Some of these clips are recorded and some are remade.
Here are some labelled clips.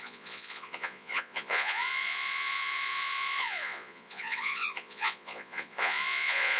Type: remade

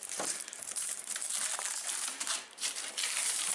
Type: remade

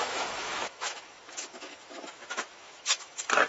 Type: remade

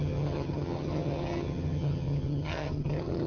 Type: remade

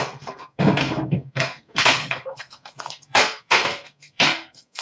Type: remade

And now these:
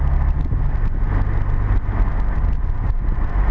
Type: recorded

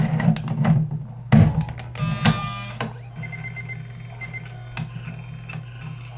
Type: recorded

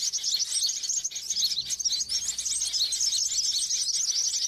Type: recorded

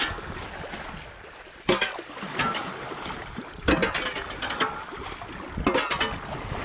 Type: recorded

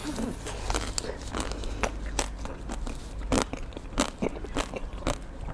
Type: recorded